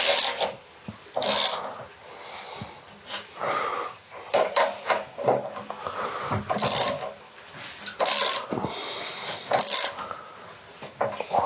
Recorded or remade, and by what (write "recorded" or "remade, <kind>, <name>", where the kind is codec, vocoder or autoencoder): recorded